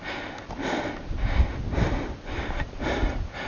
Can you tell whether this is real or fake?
real